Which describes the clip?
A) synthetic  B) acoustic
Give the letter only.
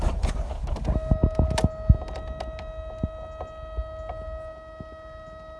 B